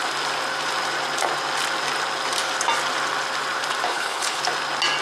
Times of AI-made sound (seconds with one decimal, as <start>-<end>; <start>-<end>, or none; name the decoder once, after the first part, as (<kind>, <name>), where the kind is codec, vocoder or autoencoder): 3.9-4.4 (codec, HILCodec)